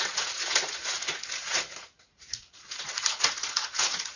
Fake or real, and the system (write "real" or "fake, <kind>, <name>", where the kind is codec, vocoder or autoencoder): fake, vocoder, Vocos